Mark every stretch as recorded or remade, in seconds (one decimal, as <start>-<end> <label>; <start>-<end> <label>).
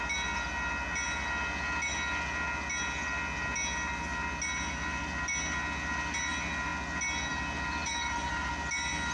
0.0-7.8 recorded; 7.8-8.5 remade; 8.5-9.1 recorded